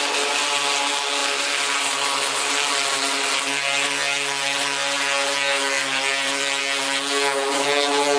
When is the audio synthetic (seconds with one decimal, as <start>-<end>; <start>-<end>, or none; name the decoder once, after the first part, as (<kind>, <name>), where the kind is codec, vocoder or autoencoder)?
1.2-2.5 (vocoder, BigVGAN v2); 5.8-6.6